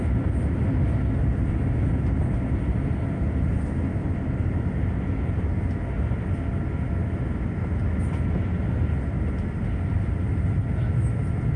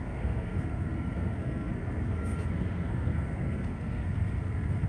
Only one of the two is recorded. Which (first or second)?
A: first